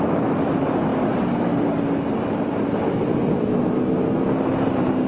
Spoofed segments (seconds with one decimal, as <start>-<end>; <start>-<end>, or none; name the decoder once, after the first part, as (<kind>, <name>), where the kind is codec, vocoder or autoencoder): none